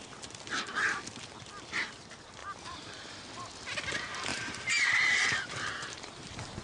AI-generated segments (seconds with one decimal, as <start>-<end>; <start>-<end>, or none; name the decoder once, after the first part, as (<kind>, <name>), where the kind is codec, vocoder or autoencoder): 2.4-3.3 (vocoder, BigVGAN v2); 4.3-6.6